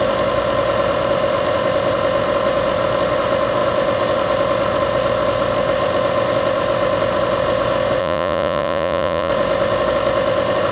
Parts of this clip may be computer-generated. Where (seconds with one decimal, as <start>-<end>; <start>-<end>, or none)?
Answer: 8.0-9.3